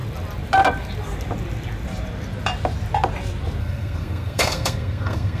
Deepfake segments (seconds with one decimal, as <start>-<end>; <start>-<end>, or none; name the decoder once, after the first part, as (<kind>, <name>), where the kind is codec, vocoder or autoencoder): 3.6-5.4 (codec, SNAC)